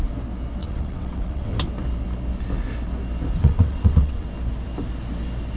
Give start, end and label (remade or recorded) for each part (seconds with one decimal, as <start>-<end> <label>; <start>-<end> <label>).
0.0-0.6 recorded; 0.6-1.5 remade; 1.5-3.4 recorded; 3.4-4.3 remade; 4.3-5.6 recorded